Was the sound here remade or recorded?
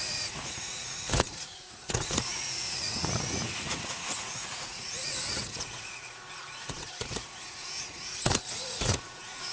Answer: remade